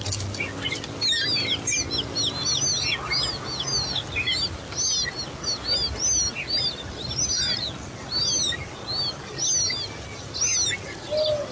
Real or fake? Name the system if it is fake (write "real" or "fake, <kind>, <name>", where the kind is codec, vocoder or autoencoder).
real